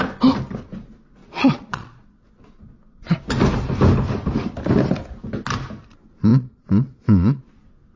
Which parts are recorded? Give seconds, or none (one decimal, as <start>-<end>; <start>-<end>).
0.0-1.2; 2.4-6.3; 7.4-8.0